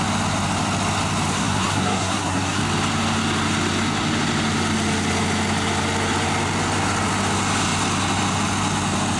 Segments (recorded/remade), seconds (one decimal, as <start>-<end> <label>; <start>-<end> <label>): 0.0-1.3 recorded; 1.3-2.6 remade; 2.6-9.2 recorded